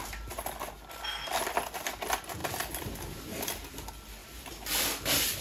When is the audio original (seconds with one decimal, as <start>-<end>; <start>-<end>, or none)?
0.0-5.4

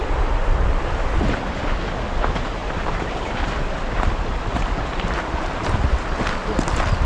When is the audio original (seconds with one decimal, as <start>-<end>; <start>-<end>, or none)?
1.2-2.6